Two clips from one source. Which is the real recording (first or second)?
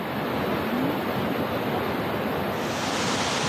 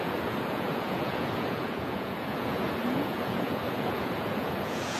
first